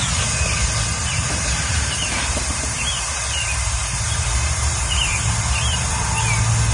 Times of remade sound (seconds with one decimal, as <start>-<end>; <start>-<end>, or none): 1.1-3.2; 3.6-5.9